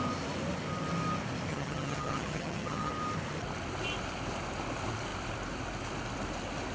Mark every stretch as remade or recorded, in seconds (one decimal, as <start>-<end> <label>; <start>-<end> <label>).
0.0-1.5 recorded; 1.5-2.9 remade; 2.9-6.7 recorded